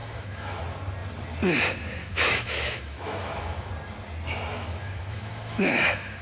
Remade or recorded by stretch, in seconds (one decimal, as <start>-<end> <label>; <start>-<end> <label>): 0.0-0.6 remade; 0.6-2.0 recorded; 2.0-3.7 remade; 3.7-4.5 recorded; 4.5-6.2 remade